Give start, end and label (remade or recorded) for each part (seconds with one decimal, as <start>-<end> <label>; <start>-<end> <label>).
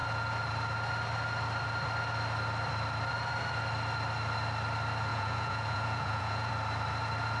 0.0-5.1 recorded; 5.1-6.5 remade; 6.5-7.4 recorded